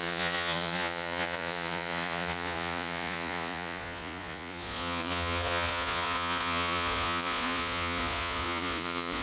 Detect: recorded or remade remade